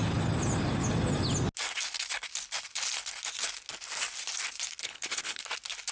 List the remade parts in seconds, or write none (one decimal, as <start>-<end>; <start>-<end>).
4.8-5.4